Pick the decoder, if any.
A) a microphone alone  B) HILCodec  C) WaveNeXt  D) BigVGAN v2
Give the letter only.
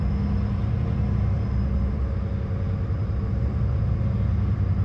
D